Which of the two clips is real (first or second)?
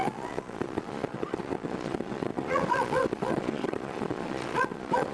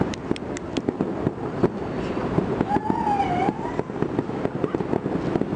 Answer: second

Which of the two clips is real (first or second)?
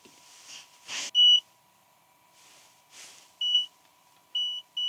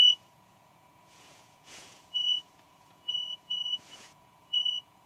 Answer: first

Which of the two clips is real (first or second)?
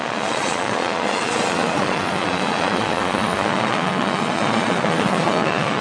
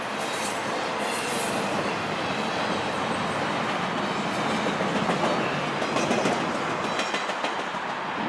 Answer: second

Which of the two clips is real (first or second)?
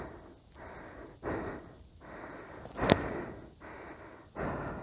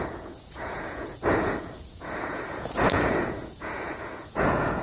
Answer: first